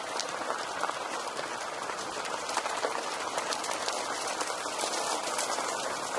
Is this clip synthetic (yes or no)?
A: yes